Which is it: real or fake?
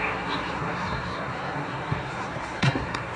fake